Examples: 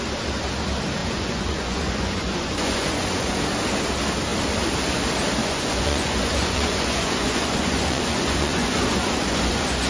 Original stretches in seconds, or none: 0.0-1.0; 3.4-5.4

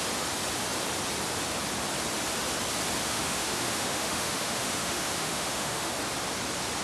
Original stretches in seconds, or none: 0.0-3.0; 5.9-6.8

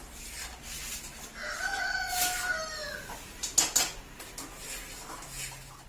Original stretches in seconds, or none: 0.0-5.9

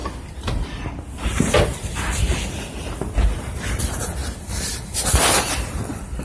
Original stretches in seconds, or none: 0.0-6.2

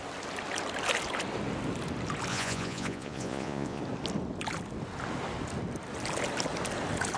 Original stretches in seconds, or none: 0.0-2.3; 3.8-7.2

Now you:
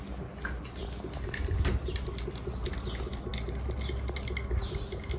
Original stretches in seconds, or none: 0.0-5.2

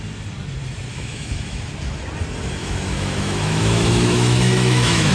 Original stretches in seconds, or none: 0.0-0.9; 1.6-2.6

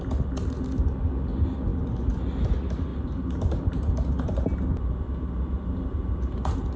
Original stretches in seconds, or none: 0.0-2.9